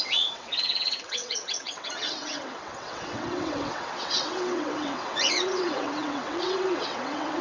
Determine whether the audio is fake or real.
fake